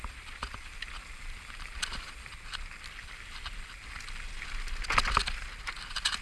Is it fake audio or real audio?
real